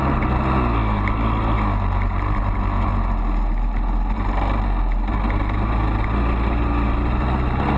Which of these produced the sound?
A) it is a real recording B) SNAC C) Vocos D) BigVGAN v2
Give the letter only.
A